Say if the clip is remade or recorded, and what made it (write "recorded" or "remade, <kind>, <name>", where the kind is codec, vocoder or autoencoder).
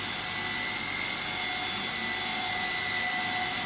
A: recorded